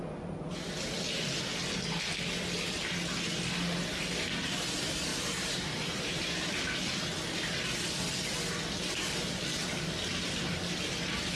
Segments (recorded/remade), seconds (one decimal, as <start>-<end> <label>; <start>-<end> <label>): 0.0-5.1 recorded; 5.1-6.6 remade; 6.6-11.4 recorded

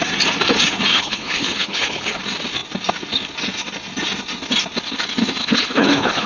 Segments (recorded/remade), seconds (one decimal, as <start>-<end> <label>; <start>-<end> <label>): 0.0-0.9 recorded; 0.9-2.2 remade; 2.2-5.4 recorded; 5.4-6.3 remade

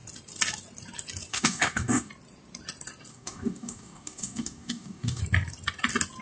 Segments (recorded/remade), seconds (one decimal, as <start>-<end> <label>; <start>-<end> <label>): 0.0-1.3 recorded; 1.3-2.1 remade; 2.1-3.1 recorded; 3.1-5.2 remade; 5.2-6.2 recorded